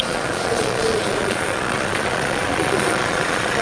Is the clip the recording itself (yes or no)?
no